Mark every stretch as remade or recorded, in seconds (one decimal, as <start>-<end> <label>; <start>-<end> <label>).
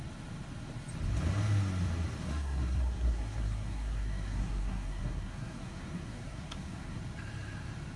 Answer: 0.0-2.2 recorded; 2.2-7.0 remade; 7.0-8.0 recorded